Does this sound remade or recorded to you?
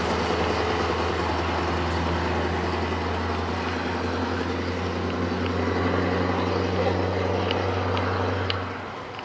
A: recorded